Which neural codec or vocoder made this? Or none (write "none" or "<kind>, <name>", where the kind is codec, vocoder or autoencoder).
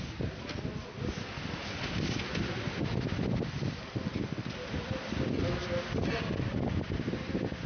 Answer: none